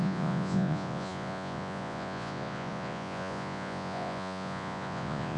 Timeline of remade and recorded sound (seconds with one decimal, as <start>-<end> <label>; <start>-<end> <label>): 0.0-5.4 remade